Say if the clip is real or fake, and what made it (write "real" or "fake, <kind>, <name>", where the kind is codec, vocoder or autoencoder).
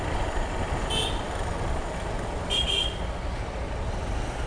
real